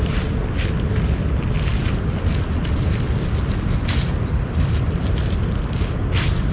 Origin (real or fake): real